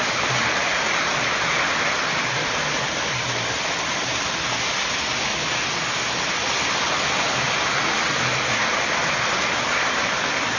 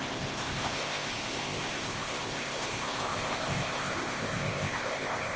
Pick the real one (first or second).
first